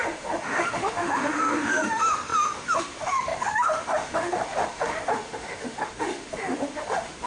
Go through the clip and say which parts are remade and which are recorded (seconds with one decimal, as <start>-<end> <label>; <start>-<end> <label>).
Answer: 0.0-7.3 remade